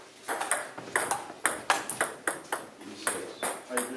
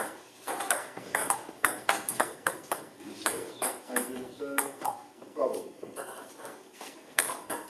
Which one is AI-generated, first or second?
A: second